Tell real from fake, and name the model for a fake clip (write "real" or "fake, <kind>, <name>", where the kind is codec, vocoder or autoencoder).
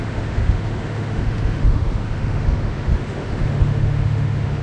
fake, autoencoder, DAC-VAE